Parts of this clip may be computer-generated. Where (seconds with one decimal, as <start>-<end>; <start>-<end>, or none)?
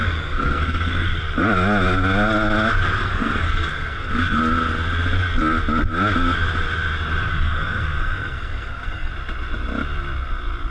0.0-1.2; 3.0-4.4; 7.3-9.1